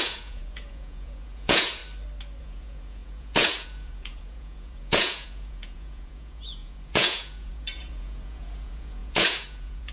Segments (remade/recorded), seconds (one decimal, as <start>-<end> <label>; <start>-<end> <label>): 0.0-1.8 remade; 1.8-2.4 recorded; 2.4-9.9 remade